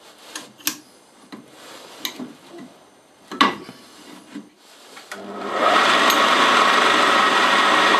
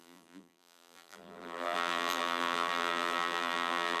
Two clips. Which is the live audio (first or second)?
first